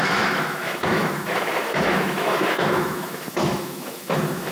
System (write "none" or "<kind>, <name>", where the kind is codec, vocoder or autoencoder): autoencoder, DAC-VAE